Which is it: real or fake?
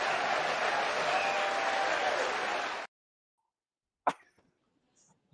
real